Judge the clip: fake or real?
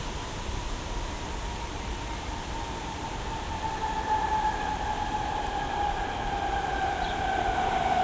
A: fake